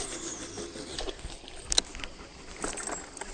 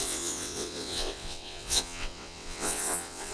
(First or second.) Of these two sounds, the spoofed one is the second